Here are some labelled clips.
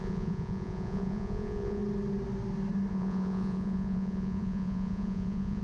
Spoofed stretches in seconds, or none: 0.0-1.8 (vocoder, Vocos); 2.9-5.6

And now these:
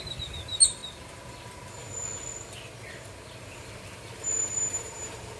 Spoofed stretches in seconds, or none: none

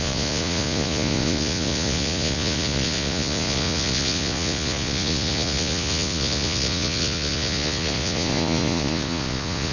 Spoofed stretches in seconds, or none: 0.0-9.7 (vocoder, Vocos)

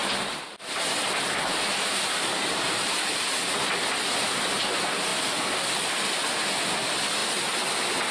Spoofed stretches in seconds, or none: 0.0-3.1 (vocoder, BigVGAN v2)

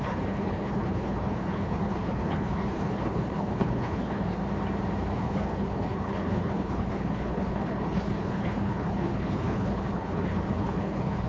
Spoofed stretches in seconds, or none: 0.0-4.4 (codec, HILCodec); 5.0-11.3

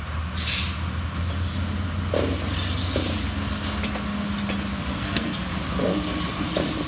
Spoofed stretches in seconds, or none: 4.9-5.4 (codec, SNAC)